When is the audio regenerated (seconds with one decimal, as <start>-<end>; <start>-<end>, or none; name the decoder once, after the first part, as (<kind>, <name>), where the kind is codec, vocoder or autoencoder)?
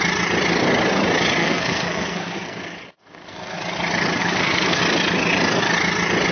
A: 1.4-3.6 (codec, SNAC); 4.2-4.8